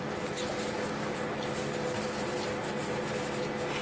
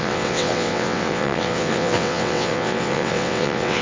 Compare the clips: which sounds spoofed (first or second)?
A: second